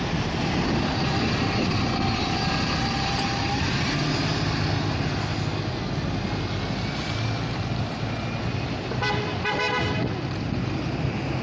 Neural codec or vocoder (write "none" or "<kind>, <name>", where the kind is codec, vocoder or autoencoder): none